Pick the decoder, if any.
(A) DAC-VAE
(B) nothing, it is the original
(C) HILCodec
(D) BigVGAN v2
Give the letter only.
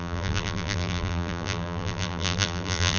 D